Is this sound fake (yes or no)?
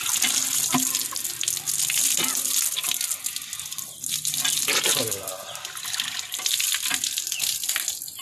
no